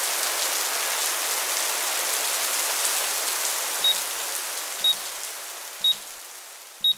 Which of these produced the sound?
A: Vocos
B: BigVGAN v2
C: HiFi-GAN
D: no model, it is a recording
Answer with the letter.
D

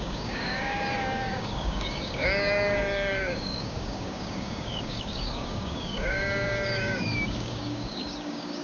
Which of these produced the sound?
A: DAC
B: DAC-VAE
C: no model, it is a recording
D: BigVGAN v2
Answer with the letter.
A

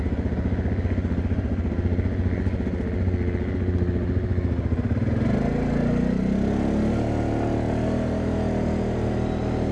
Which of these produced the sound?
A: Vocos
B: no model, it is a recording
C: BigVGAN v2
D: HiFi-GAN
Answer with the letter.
B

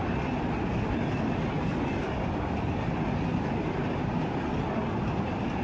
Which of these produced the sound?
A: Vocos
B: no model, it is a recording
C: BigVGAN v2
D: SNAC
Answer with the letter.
B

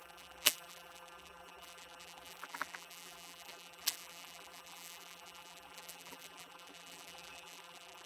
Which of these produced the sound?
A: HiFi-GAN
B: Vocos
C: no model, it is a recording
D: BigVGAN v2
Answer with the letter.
D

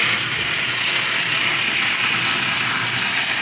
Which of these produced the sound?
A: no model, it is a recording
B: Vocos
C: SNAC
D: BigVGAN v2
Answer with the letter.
A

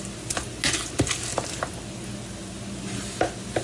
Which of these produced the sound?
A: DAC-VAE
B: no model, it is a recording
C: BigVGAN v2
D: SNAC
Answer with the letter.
B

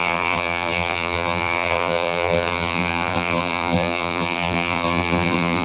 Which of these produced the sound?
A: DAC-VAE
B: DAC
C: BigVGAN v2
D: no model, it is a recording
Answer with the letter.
C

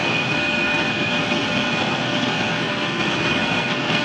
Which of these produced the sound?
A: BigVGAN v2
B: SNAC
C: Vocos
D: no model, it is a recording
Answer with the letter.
B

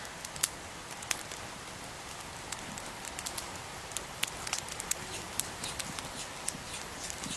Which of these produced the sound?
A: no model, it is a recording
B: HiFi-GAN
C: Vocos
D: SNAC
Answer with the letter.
A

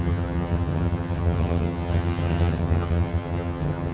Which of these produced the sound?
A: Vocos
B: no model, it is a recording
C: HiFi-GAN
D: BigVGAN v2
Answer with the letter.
C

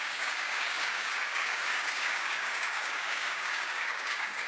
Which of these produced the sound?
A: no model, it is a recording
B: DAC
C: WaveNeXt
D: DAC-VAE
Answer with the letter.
B